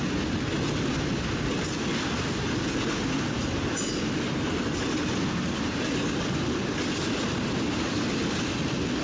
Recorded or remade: recorded